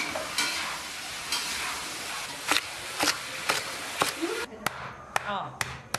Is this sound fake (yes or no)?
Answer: no